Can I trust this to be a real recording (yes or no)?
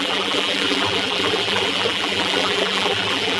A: no